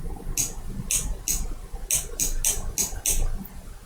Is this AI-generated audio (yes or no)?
no